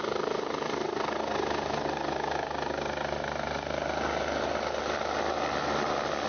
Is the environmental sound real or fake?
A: real